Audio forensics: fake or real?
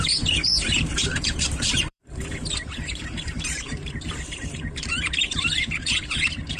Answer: fake